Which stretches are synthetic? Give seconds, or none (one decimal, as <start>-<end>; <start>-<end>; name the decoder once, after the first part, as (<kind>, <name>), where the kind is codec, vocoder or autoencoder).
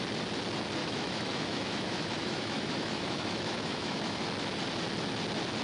0.8-4.2 (autoencoder, DAC-VAE)